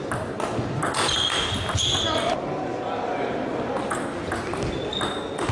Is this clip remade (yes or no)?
no